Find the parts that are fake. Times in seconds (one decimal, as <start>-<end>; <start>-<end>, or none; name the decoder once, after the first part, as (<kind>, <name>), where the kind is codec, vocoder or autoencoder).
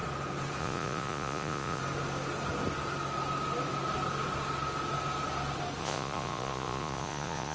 0.6-1.8 (vocoder, Vocos); 5.8-7.5